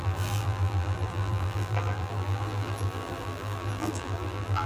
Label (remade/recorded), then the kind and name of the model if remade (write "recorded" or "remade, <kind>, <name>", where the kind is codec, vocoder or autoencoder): remade, vocoder, BigVGAN v2